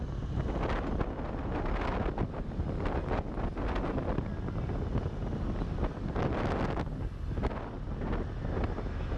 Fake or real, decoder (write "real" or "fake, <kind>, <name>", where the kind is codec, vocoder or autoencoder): real